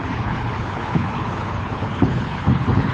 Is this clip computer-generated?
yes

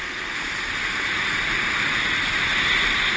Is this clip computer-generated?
no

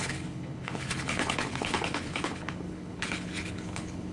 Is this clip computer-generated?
yes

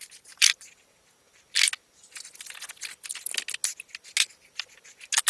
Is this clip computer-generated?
no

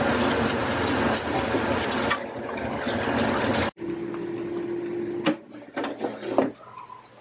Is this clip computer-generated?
no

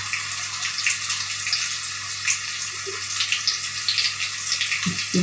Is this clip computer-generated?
no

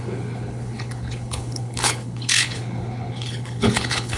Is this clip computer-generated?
yes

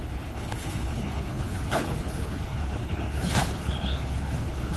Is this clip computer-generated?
yes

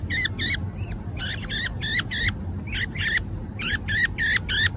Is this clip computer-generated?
no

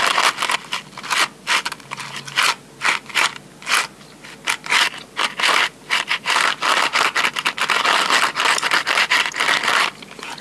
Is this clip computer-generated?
no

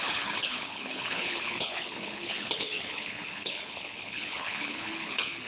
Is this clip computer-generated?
yes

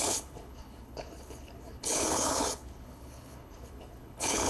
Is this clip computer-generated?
yes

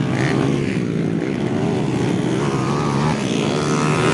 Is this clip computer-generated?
no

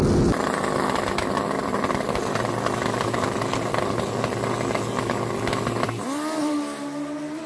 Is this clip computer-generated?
no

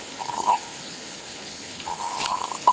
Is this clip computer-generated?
yes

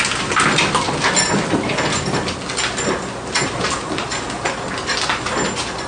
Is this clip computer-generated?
no